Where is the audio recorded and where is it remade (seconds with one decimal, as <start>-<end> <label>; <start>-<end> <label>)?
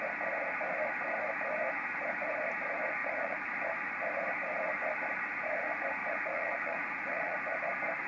0.0-3.0 recorded; 3.0-3.6 remade; 3.6-6.0 recorded; 6.0-7.6 remade; 7.6-8.1 recorded